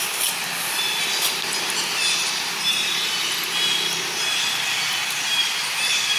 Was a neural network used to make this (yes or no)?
no